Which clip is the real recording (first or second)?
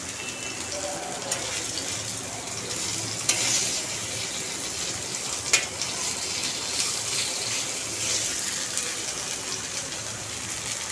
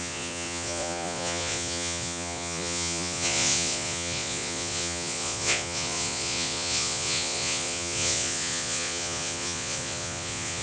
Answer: first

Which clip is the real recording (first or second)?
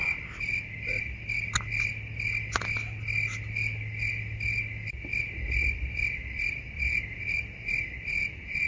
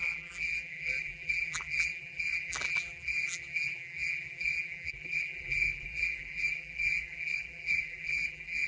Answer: first